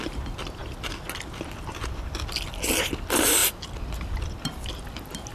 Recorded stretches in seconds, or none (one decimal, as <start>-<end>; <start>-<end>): 0.0-5.3